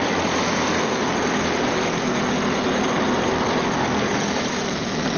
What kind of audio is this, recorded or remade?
recorded